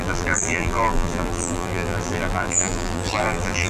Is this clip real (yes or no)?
no